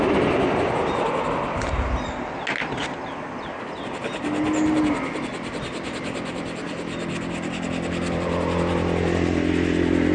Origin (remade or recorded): recorded